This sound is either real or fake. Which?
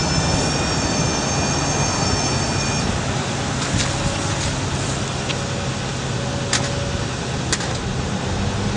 real